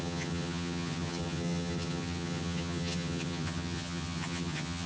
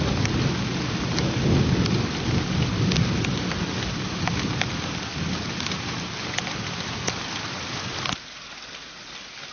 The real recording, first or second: second